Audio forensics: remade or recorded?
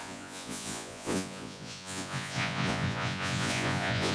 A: remade